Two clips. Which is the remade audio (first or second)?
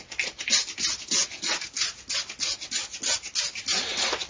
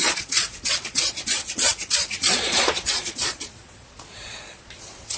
second